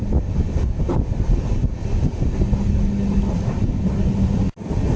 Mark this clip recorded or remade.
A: recorded